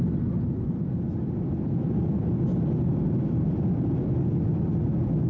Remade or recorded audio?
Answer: recorded